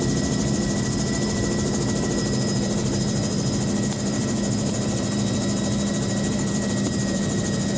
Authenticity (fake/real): fake